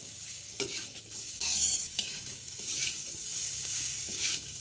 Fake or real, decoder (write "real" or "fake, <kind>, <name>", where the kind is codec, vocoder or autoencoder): fake, codec, DAC